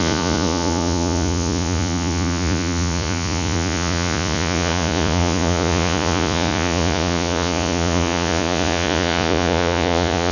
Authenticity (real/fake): fake